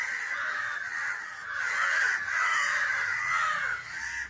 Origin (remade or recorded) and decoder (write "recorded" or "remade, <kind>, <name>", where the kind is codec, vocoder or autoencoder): recorded